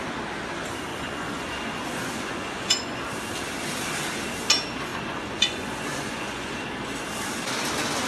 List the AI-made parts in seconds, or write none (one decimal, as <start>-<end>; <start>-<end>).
0.9-3.1; 4.9-6.5